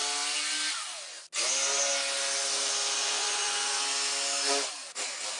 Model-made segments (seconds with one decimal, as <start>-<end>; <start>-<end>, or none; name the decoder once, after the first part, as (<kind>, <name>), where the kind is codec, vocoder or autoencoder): 3.0-3.8 (vocoder, Vocos)